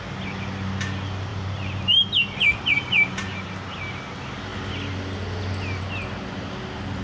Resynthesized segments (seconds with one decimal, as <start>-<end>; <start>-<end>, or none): 1.3-3.5